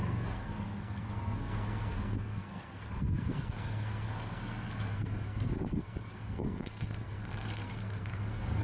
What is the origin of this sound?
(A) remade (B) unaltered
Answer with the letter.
A